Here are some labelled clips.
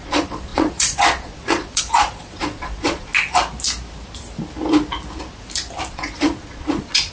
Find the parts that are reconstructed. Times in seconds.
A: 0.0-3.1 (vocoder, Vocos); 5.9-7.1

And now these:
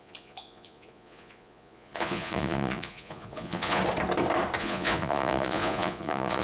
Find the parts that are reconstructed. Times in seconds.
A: 0.0-3.8 (vocoder, Vocos); 4.6-6.4

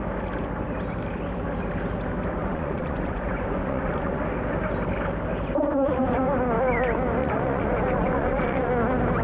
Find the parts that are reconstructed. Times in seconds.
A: 2.3-4.2 (vocoder, Vocos); 5.7-6.3; 7.2-8.7

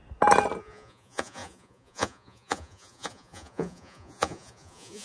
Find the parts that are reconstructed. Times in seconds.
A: 0.6-5.0 (vocoder, Vocos)

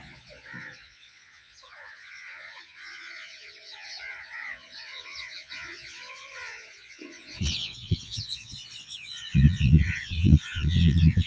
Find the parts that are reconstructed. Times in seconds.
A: 0.0-11.3 (vocoder, Vocos)

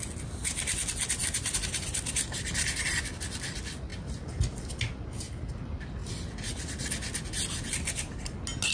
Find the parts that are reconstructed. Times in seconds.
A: none

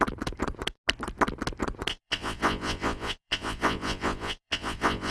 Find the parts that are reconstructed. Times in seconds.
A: 1.9-5.1 (vocoder, Vocos)